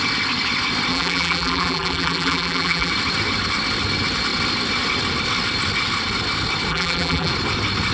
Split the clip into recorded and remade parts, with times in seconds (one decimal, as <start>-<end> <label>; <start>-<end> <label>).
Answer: 0.0-0.9 recorded; 0.9-2.9 remade; 2.9-6.7 recorded; 6.7-7.3 remade; 7.3-7.9 recorded